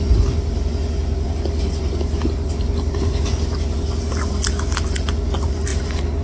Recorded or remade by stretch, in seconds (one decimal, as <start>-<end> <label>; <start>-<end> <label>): 0.0-6.2 recorded